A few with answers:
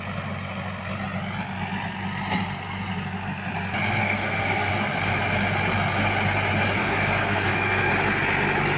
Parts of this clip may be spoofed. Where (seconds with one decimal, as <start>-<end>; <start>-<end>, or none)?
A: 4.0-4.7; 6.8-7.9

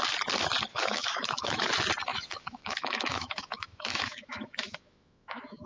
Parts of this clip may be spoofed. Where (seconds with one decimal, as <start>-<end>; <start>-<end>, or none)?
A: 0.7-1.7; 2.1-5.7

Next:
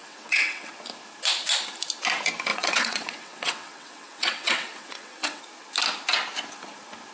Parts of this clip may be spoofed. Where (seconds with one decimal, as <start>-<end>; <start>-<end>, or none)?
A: 0.0-0.7; 2.5-5.4

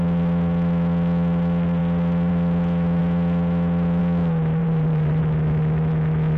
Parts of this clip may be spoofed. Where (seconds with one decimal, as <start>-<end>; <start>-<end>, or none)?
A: 4.6-5.2

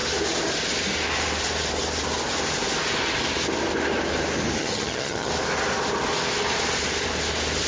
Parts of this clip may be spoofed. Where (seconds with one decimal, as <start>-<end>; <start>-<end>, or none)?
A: 4.6-5.3

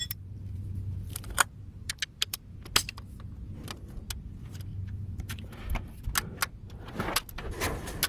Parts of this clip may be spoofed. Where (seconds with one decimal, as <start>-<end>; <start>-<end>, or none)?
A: 0.0-2.4; 4.7-5.5

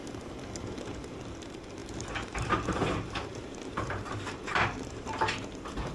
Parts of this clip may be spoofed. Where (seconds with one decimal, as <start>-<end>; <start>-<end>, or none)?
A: 1.8-5.3

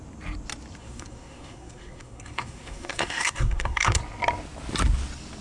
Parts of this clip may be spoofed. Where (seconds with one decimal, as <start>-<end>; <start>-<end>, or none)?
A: 0.8-4.0